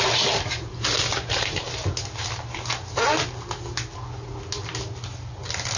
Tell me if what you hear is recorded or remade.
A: recorded